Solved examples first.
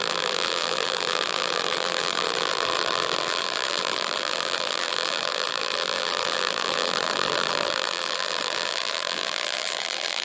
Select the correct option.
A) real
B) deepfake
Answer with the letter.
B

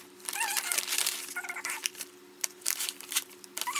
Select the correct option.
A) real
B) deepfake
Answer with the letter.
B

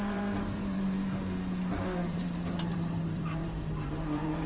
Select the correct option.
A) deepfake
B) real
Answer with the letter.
A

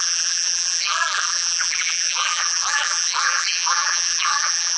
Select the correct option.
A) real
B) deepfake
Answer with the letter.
B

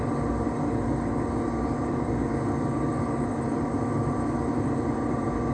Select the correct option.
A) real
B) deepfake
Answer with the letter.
B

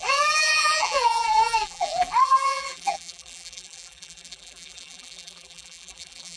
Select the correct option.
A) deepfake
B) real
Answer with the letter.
A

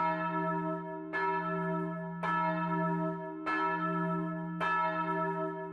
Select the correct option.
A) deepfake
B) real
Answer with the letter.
B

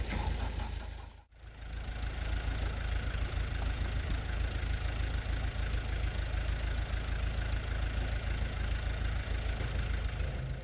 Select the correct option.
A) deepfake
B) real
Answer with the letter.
B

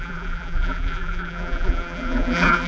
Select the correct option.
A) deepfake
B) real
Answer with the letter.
A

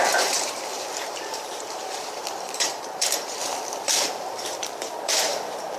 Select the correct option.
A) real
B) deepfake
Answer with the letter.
B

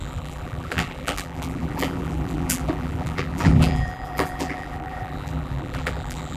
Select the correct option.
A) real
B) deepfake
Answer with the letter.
B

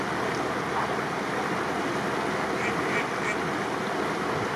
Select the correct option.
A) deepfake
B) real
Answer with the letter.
B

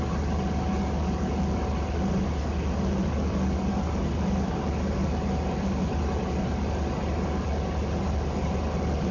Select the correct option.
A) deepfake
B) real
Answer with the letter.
B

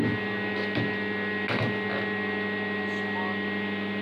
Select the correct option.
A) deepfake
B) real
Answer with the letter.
B